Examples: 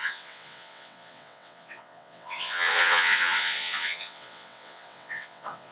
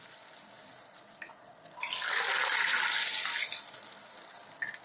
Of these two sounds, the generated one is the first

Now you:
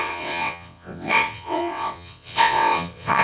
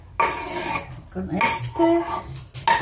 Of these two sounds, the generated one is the first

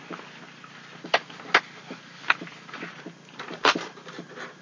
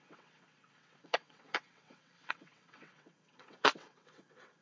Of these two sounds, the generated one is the second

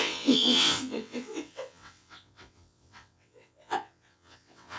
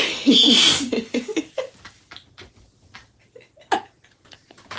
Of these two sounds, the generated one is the first